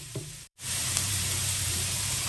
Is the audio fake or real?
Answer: fake